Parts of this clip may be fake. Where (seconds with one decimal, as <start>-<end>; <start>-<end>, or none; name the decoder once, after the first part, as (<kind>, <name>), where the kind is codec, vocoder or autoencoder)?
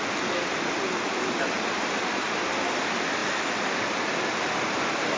none